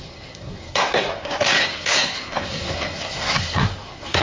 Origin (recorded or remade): remade